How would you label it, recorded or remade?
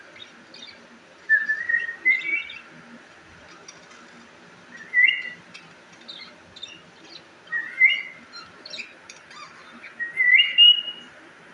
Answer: recorded